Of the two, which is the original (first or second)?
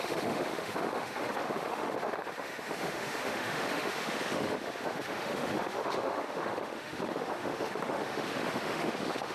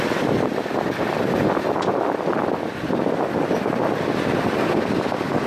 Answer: second